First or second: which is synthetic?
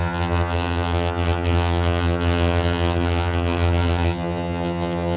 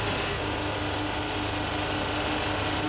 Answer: first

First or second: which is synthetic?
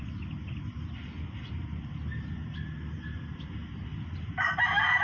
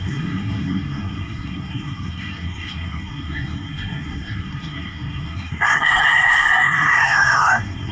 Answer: second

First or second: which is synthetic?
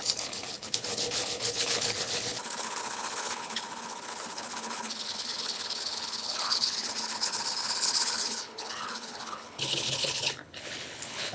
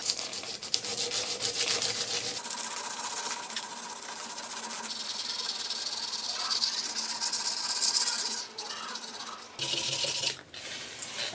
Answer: first